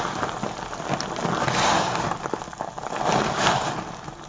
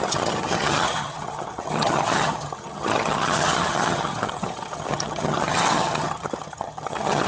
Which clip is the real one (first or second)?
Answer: first